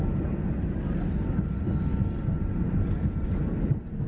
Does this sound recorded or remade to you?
recorded